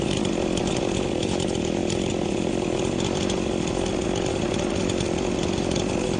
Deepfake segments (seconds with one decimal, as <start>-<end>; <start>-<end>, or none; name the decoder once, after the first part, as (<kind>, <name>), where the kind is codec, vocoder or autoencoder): none